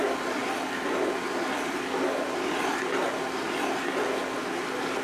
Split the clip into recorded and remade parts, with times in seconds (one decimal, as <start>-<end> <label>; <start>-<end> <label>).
0.0-5.0 recorded

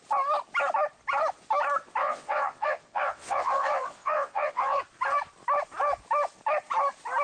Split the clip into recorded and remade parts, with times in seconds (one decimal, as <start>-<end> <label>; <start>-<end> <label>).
0.0-2.0 recorded; 2.0-4.8 remade; 4.8-7.2 recorded